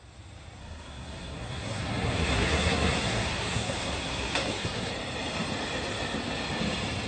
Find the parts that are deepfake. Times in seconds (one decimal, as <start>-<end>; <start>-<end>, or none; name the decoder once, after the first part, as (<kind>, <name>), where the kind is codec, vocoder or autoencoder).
0.6-4.9 (codec, SNAC)